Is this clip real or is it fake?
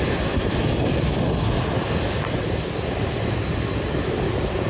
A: real